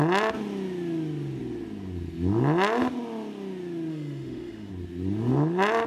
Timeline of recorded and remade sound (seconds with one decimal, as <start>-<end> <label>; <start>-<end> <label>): 0.0-3.9 recorded; 3.9-4.7 remade; 4.7-5.9 recorded